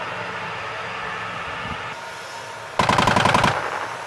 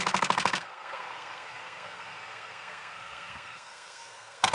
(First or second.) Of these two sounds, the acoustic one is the first